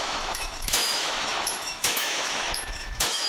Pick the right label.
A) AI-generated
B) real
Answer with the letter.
A